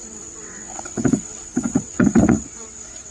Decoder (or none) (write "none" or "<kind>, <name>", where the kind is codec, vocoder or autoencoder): vocoder, WaveNeXt